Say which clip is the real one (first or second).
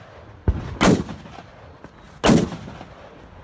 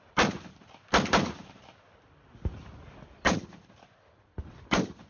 first